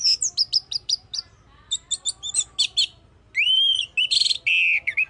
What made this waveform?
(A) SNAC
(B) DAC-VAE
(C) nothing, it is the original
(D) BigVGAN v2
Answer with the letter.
C